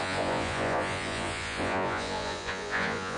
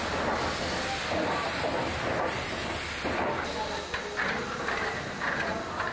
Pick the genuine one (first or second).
second